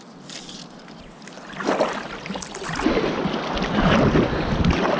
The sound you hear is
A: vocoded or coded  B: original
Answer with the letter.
B